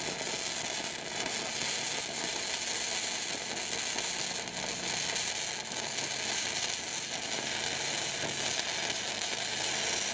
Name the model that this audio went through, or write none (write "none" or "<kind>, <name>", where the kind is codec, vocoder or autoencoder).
none